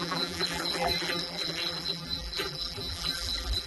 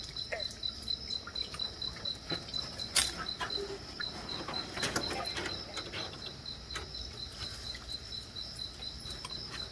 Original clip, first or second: second